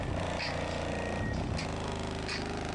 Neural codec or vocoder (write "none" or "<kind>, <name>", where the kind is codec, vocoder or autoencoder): none